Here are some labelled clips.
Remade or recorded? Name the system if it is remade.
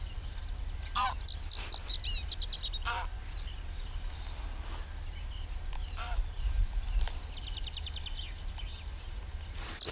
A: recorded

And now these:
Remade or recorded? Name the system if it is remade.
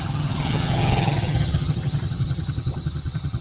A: remade, vocoder, HiFi-GAN